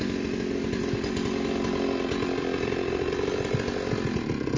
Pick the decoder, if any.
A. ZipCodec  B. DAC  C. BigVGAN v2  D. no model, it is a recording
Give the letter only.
D